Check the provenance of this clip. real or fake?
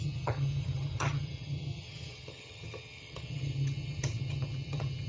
fake